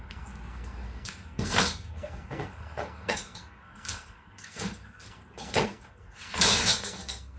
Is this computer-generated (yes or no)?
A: yes